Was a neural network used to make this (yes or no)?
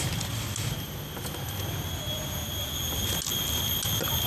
no